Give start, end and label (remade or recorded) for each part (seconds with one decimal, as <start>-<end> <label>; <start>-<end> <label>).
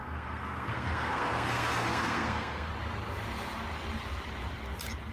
0.0-2.7 remade; 2.7-5.1 recorded